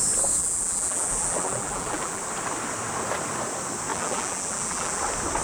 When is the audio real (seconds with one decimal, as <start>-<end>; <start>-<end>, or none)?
0.0-0.4; 2.2-3.9; 5.0-5.4